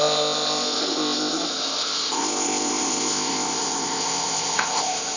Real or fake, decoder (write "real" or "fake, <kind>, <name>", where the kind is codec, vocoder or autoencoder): fake, codec, ZipCodec